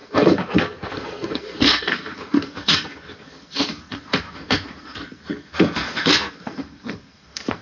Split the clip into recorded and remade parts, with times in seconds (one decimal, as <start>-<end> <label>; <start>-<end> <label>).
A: 0.0-7.6 remade